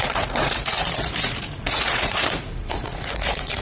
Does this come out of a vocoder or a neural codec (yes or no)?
yes